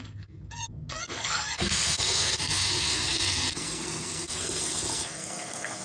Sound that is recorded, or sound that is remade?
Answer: remade